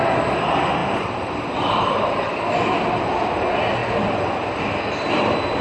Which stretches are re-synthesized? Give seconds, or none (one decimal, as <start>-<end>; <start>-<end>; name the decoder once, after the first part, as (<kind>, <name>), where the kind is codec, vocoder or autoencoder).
0.8-2.4 (vocoder, BigVGAN v2)